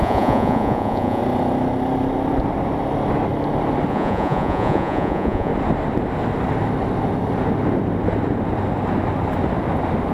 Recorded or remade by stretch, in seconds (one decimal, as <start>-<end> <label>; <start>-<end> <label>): 0.0-1.2 remade; 1.2-3.9 recorded; 3.9-5.5 remade; 5.5-10.1 recorded

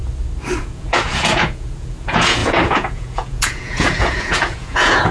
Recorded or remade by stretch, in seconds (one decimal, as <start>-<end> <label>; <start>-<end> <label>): 0.0-0.6 recorded; 0.6-5.1 remade

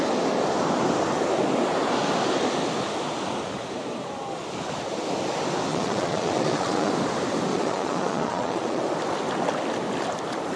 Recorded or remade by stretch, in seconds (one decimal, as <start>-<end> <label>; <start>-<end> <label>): 0.0-5.7 recorded; 5.7-6.9 remade; 6.9-7.5 recorded; 7.5-8.8 remade; 8.8-10.6 recorded

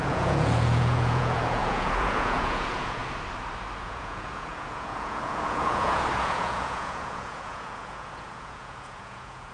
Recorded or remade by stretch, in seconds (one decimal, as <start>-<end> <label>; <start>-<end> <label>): 0.0-3.0 remade; 3.0-3.8 recorded; 3.8-9.5 remade

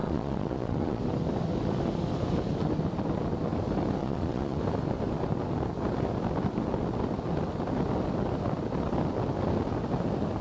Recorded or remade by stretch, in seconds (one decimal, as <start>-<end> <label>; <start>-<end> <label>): 0.0-1.0 remade; 1.0-4.0 recorded; 4.0-4.6 remade; 4.6-10.4 recorded

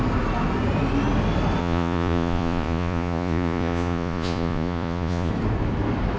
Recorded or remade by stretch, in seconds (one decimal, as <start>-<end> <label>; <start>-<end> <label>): 0.0-1.6 recorded; 1.6-5.3 remade; 5.3-6.2 recorded

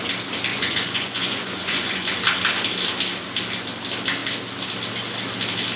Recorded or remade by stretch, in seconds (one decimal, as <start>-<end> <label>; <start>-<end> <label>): 0.0-0.5 recorded; 0.5-2.2 remade; 2.2-5.8 recorded

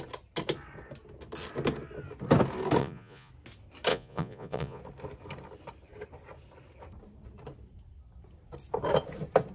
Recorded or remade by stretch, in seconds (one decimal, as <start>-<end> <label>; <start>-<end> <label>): 0.0-2.8 recorded; 2.8-3.3 remade; 3.3-3.9 recorded; 3.9-4.8 remade; 4.8-9.5 recorded